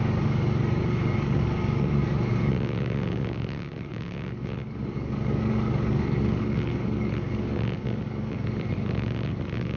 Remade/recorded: remade